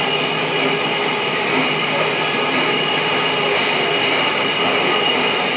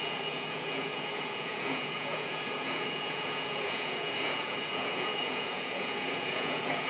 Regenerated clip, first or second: second